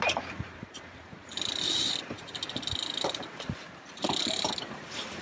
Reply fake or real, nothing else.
fake